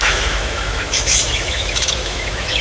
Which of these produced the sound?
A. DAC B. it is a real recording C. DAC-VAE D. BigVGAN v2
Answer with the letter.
C